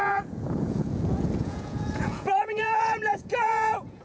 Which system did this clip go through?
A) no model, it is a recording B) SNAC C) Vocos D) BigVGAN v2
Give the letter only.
C